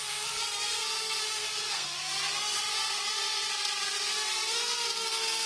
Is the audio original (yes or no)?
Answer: no